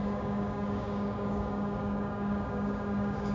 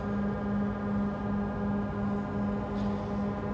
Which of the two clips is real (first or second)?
second